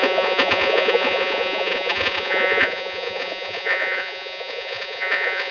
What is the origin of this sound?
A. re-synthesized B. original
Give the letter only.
A